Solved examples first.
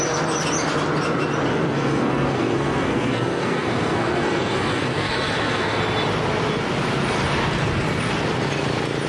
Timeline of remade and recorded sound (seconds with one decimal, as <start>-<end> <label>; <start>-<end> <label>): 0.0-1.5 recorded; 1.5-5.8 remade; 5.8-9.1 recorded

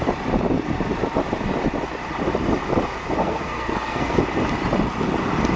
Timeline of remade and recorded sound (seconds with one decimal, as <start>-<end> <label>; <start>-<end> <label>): 0.0-3.2 recorded; 3.2-4.2 remade; 4.2-5.6 recorded

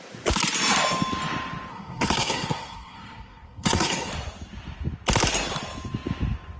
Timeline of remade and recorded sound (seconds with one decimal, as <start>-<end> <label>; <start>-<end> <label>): 0.0-1.7 recorded; 1.7-4.1 remade; 4.1-6.6 recorded

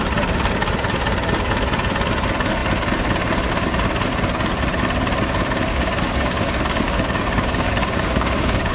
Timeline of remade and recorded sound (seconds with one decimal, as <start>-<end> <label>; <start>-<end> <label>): 0.0-5.7 recorded; 5.7-8.7 remade

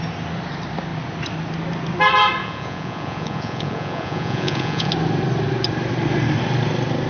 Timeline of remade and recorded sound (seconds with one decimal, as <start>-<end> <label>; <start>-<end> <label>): 0.0-2.4 recorded; 2.4-4.9 remade; 4.9-7.1 recorded

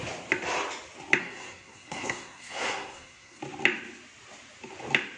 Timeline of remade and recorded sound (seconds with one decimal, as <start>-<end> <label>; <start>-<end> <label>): 0.0-1.2 recorded; 1.2-3.4 remade; 3.4-5.2 recorded

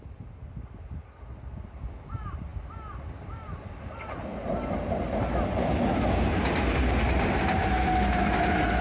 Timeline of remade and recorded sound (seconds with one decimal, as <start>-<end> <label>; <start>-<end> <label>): 0.0-8.8 recorded

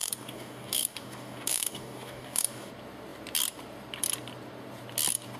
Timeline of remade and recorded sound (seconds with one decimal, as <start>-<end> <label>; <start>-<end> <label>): 0.0-2.7 remade; 2.7-5.4 recorded